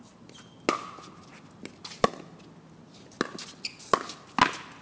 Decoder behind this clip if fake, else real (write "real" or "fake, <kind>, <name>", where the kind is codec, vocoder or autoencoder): real